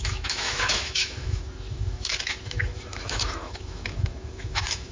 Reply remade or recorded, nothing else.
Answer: remade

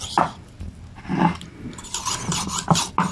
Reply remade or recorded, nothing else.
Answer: recorded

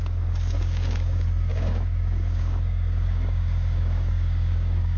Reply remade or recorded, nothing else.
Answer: remade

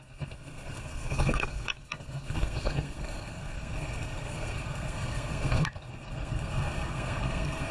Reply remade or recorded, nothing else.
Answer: remade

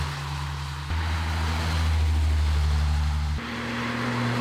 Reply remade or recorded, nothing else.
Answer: recorded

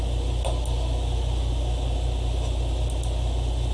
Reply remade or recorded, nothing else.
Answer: recorded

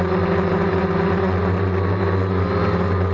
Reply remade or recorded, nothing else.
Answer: recorded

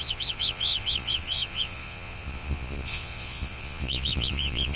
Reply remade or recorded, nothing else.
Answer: remade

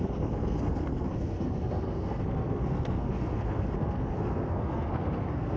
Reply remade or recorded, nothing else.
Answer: remade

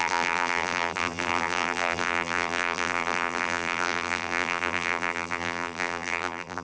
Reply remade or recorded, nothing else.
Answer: remade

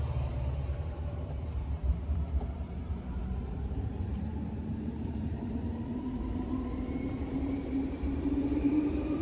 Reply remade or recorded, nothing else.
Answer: remade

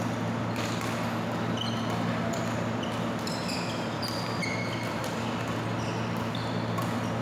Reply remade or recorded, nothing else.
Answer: remade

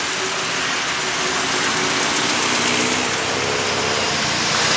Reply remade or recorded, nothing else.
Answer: recorded